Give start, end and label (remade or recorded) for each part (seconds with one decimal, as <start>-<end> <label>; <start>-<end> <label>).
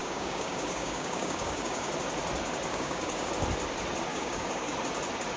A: 0.0-1.9 remade; 1.9-2.7 recorded; 2.7-3.3 remade; 3.3-4.1 recorded; 4.1-4.7 remade; 4.7-5.4 recorded